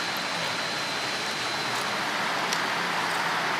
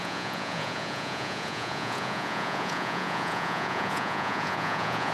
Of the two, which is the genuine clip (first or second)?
first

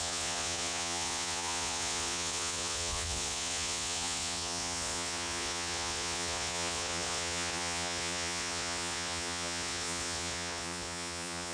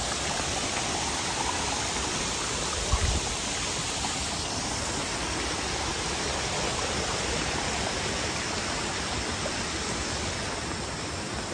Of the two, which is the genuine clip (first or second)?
second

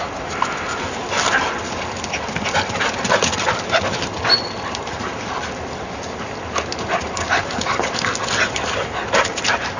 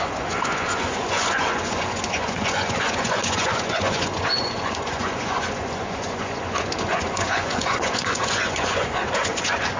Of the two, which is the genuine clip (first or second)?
first